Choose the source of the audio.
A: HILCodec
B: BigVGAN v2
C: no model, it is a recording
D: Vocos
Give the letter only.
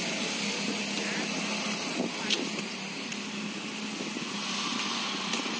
C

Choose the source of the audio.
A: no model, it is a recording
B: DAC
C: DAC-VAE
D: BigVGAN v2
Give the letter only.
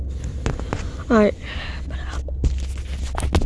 A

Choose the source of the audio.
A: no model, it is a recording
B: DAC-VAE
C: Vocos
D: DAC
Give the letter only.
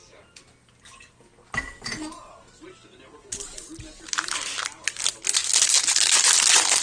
A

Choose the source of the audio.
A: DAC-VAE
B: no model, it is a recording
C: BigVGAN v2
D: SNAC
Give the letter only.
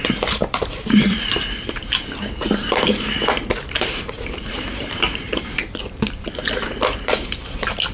C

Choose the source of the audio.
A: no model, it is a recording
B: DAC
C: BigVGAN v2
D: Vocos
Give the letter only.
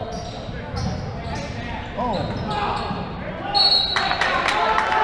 A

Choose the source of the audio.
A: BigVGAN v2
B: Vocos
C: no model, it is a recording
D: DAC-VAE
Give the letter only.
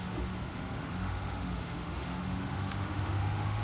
D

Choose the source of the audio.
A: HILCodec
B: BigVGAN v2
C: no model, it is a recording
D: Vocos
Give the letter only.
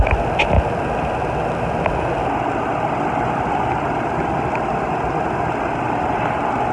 C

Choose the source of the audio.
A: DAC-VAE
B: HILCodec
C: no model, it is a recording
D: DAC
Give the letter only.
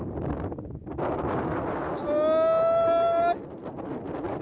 C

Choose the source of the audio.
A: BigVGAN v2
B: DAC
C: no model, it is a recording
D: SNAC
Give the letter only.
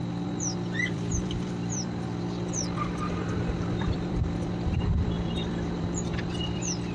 A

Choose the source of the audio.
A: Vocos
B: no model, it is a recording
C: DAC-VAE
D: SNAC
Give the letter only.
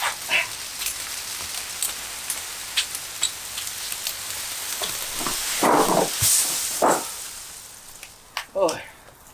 B